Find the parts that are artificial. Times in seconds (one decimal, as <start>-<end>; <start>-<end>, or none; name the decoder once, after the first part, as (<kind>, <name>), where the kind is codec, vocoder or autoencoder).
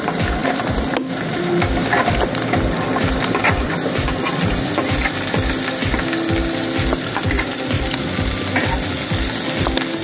0.4-0.9 (vocoder, BigVGAN v2); 3.4-4.9; 6.9-8.2